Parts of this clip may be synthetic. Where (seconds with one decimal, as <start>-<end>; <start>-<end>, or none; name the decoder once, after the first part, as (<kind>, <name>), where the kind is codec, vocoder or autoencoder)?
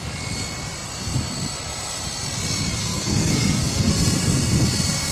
2.8-3.9 (codec, SNAC)